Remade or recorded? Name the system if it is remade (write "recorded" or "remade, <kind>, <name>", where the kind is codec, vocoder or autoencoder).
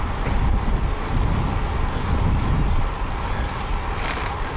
recorded